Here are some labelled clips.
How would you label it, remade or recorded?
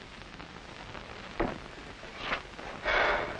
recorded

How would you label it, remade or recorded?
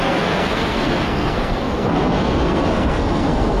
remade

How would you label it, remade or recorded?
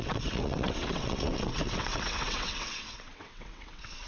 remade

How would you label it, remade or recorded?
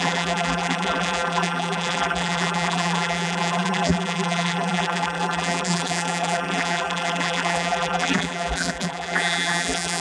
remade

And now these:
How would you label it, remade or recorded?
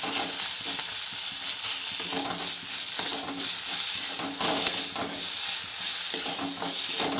recorded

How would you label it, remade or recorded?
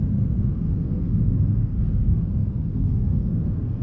remade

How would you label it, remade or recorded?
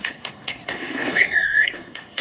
remade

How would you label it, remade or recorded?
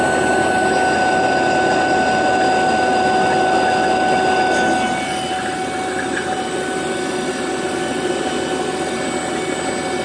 recorded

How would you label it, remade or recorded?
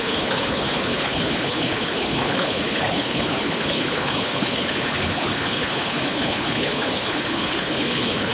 remade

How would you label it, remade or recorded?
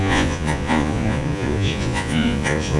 remade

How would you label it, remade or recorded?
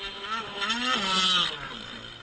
recorded